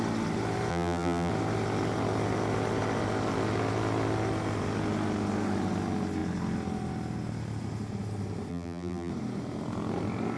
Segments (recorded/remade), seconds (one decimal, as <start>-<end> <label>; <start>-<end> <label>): 0.0-0.7 recorded; 0.7-1.3 remade; 1.3-8.5 recorded; 8.5-9.1 remade; 9.1-10.4 recorded